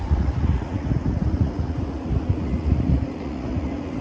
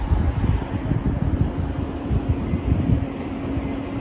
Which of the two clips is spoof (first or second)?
first